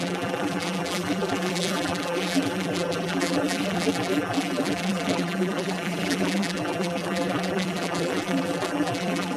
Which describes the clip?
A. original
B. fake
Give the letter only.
B